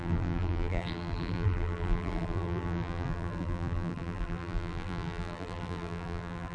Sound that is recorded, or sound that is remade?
remade